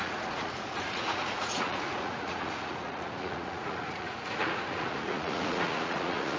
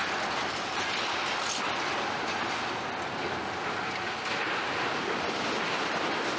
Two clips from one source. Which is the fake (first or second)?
first